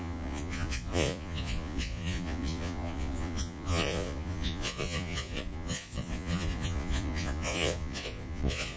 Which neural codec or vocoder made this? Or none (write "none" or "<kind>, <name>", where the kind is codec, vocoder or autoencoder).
vocoder, Vocos